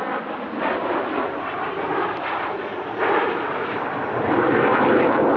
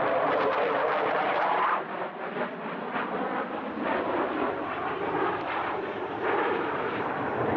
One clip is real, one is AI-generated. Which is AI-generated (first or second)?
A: second